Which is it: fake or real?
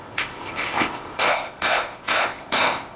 fake